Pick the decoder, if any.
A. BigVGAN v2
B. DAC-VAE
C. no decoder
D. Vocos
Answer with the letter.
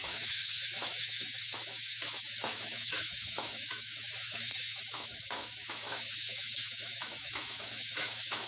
B